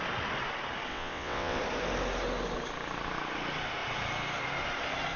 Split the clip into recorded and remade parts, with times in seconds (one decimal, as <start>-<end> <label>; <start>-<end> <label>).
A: 0.0-0.9 recorded; 0.9-1.6 remade; 1.6-5.2 recorded

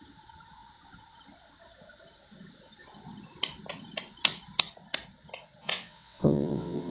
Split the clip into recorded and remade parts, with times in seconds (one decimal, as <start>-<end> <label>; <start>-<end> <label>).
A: 0.0-5.7 recorded; 5.7-6.9 remade